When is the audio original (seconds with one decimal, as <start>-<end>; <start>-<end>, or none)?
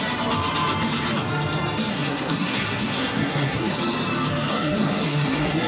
0.0-1.9; 3.8-4.5